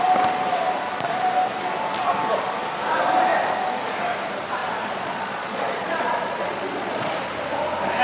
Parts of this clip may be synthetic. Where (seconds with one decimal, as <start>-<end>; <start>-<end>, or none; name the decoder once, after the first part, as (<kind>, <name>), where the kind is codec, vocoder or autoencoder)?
4.6-7.1 (vocoder, Vocos)